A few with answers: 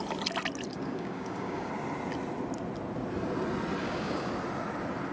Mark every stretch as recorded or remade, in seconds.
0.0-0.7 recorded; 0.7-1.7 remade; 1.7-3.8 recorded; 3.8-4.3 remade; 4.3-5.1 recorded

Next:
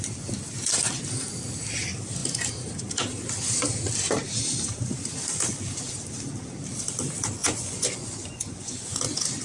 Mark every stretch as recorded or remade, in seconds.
0.0-7.4 recorded; 7.4-9.0 remade; 9.0-9.4 recorded

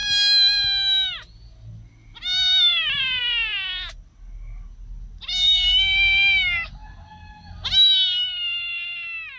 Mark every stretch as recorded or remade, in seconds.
0.0-9.4 recorded

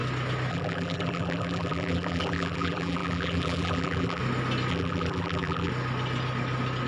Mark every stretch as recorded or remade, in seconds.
0.0-0.5 recorded; 0.5-4.2 remade; 4.2-4.7 recorded; 4.7-5.7 remade; 5.7-6.9 recorded

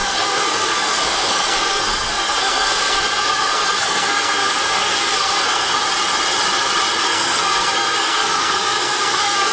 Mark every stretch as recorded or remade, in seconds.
0.0-5.8 remade; 5.8-7.0 recorded; 7.0-9.5 remade

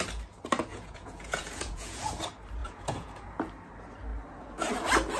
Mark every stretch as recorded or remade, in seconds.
0.0-0.7 recorded; 0.7-2.1 remade; 2.1-2.6 recorded; 2.6-3.4 remade; 3.4-5.2 recorded

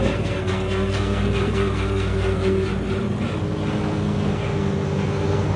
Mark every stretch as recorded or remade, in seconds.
0.0-2.7 remade; 2.7-3.7 recorded; 3.7-5.6 remade